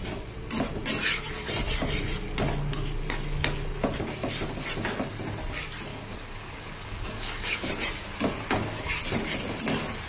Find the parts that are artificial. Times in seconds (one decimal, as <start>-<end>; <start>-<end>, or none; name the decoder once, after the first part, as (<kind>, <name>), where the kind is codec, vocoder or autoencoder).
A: 5.9-7.7 (codec, DAC)